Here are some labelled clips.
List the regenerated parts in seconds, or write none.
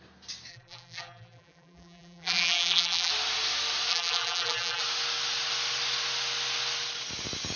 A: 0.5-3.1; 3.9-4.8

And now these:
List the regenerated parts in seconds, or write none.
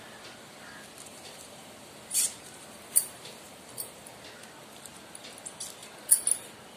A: 1.1-4.1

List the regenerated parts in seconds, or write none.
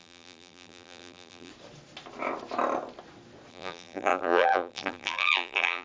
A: 0.0-1.5; 3.5-5.8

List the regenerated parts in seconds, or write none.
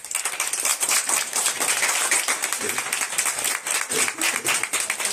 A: 0.7-2.8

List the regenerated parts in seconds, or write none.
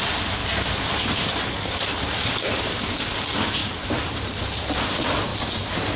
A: 0.0-0.4; 1.3-5.3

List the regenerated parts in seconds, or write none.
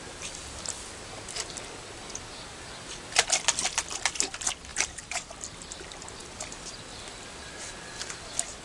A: 4.7-5.3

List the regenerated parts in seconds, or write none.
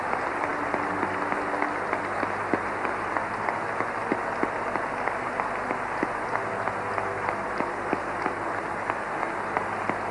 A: none